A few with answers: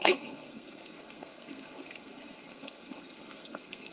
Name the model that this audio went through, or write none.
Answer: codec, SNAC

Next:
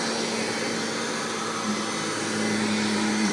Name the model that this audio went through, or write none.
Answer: none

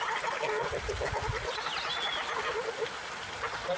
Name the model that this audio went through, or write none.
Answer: none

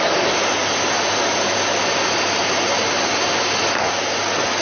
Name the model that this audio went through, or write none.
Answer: none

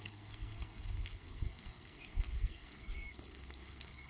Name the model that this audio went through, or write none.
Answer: codec, SNAC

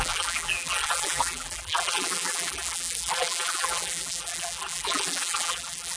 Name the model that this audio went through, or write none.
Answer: vocoder, BigVGAN v2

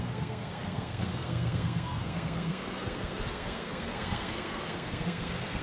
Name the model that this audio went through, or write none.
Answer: codec, SNAC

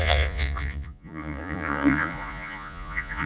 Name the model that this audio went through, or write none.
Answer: vocoder, Vocos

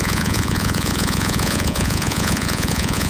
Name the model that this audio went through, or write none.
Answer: vocoder, Vocos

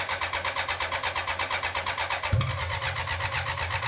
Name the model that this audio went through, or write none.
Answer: none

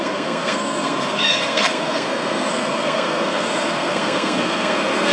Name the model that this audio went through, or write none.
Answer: codec, SNAC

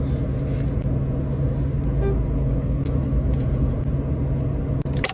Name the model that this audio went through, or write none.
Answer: none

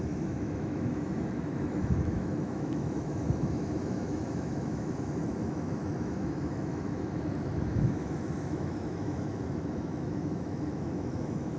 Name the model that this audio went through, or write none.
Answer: autoencoder, DAC-VAE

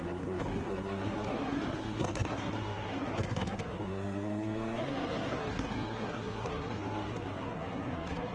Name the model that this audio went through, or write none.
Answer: codec, SNAC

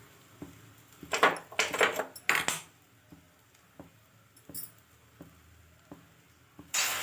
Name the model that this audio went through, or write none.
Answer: none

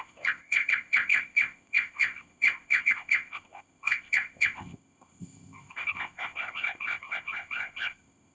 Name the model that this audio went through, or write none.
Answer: codec, ZipCodec